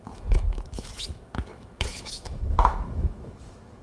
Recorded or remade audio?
remade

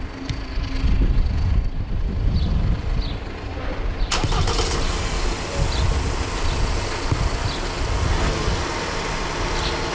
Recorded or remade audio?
recorded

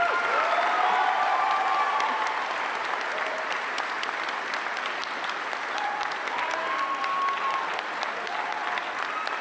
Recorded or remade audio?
recorded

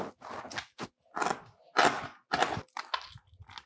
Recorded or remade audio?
recorded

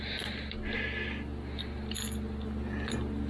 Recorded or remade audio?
recorded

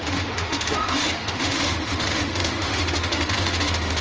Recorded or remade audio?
remade